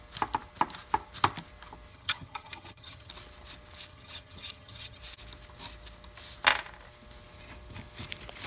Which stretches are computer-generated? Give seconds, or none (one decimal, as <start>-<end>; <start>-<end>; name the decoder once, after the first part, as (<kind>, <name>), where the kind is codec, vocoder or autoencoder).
1.9-3.1 (vocoder, HiFi-GAN); 3.9-5.0